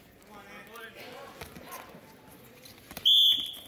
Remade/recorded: recorded